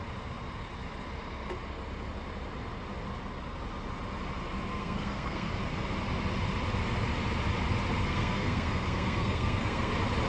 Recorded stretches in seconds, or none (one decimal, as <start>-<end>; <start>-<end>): 0.0-4.7; 5.5-8.0; 9.9-10.3